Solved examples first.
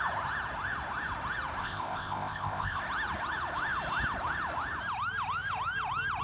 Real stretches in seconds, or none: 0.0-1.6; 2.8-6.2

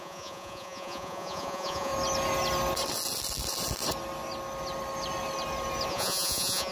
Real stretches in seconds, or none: 1.9-5.9

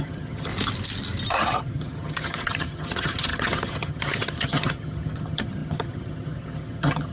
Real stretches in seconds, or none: 0.5-1.3

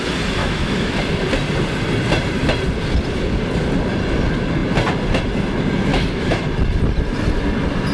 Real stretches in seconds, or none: 0.0-0.4; 1.0-5.9; 6.4-7.9

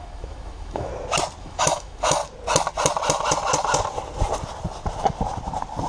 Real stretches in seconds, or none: 0.9-1.4; 2.2-5.9

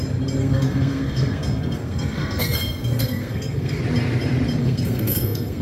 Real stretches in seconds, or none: 0.0-0.4; 3.8-4.6

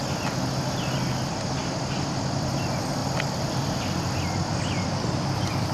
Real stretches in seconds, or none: 0.0-3.0